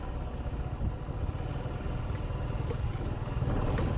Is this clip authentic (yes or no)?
yes